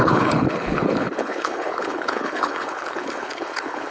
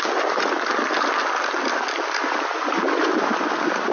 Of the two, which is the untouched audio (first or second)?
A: second